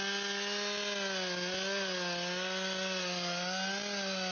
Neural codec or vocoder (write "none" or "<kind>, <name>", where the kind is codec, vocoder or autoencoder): none